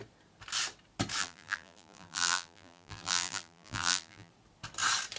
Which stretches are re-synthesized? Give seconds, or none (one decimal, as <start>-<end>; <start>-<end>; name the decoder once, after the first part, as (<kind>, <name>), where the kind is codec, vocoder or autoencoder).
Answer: 1.2-4.3 (vocoder, BigVGAN v2)